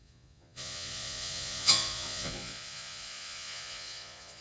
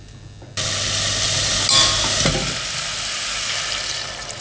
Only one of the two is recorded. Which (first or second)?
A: second